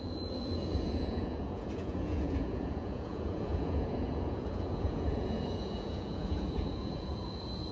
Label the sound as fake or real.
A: fake